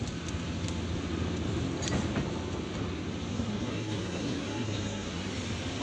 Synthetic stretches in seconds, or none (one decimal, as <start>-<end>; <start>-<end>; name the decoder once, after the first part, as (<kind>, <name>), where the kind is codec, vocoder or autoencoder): 3.3-5.3 (codec, SNAC)